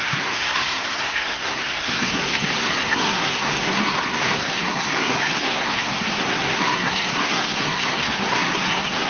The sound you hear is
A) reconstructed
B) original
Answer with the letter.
A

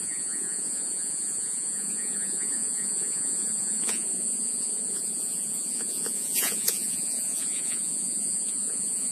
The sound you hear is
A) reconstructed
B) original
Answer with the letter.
A